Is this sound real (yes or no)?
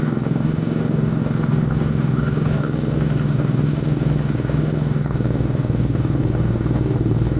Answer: no